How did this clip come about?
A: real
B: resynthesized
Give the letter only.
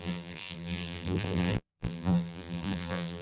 B